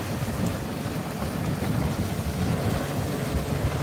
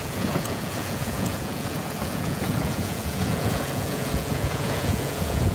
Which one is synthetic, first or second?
second